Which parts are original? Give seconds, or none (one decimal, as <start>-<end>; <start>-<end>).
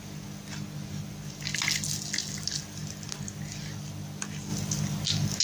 0.0-5.4